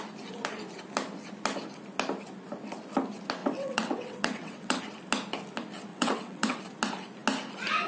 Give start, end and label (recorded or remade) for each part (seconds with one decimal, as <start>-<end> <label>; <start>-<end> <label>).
0.0-3.4 recorded; 3.4-4.8 remade; 4.8-5.9 recorded; 5.9-6.6 remade; 6.6-7.9 recorded

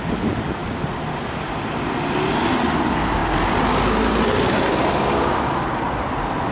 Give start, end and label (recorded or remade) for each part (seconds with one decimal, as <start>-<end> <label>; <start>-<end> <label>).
0.0-6.5 recorded

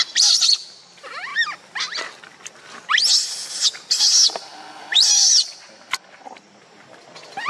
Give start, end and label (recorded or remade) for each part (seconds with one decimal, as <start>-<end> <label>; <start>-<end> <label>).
0.0-4.9 recorded; 4.9-5.5 remade; 5.5-7.5 recorded